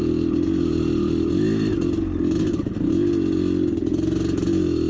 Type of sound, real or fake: real